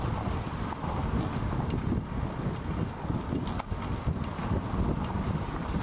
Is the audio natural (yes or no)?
yes